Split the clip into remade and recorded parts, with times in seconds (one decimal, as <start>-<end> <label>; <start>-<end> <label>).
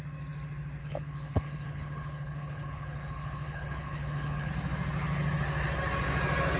0.0-0.8 recorded; 0.8-4.5 remade; 4.5-6.6 recorded